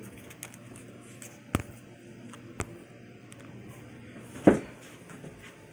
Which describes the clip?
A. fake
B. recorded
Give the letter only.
B